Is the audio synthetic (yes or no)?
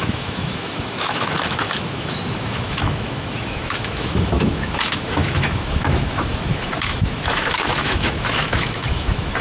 yes